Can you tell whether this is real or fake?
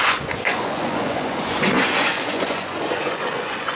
fake